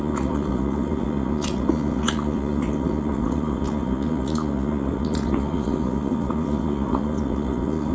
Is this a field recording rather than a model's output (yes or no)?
no